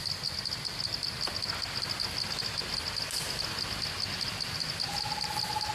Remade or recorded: recorded